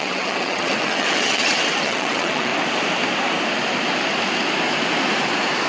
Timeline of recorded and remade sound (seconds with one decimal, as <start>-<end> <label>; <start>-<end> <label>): 0.0-2.5 remade; 2.5-5.7 recorded